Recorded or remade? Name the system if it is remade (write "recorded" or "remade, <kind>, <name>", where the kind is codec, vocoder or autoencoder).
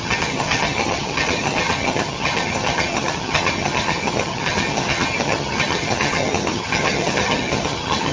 remade, vocoder, HiFi-GAN